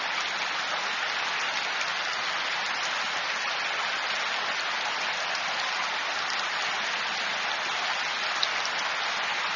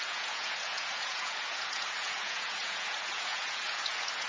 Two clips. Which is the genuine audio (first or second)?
first